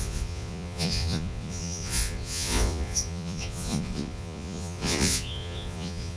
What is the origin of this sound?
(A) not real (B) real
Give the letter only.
A